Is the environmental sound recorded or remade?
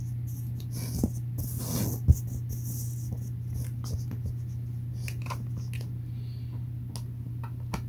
recorded